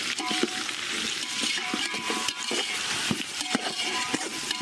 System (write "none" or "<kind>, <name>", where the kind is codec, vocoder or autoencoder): vocoder, BigVGAN v2